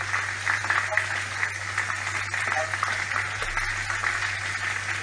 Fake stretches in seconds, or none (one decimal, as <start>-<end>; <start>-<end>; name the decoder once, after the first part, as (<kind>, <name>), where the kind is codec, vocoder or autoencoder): none